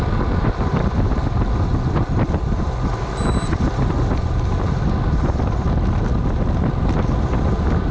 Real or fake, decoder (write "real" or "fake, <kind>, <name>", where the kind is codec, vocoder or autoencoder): real